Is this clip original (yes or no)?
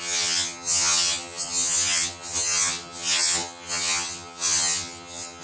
no